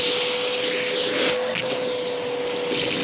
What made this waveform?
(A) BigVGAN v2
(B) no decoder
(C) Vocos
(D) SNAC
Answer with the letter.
B